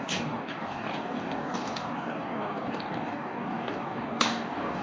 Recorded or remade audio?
remade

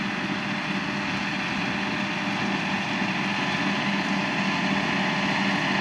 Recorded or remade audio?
recorded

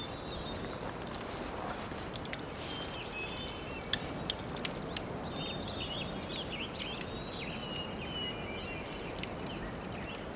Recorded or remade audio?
recorded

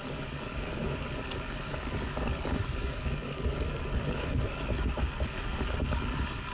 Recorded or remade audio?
remade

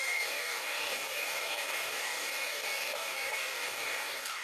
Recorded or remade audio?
remade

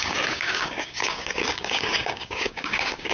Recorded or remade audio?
remade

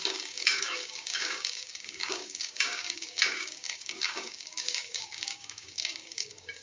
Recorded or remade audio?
remade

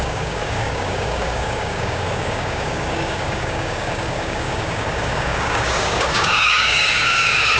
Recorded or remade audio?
remade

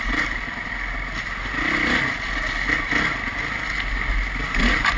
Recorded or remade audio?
recorded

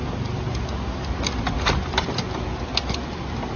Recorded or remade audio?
recorded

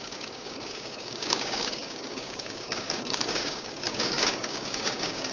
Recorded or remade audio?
remade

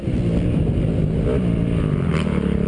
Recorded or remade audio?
recorded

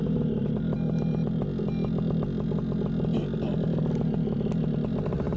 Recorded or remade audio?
recorded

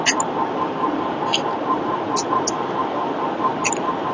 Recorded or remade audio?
recorded